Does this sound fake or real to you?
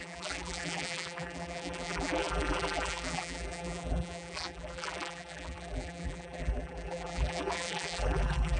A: fake